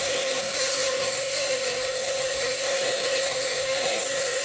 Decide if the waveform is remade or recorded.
remade